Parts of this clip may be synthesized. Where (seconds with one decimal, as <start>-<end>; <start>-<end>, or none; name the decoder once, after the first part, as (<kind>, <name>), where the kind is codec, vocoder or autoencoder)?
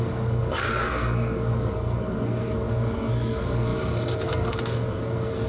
0.0-5.5 (codec, SNAC)